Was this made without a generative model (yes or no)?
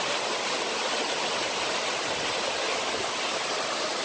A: yes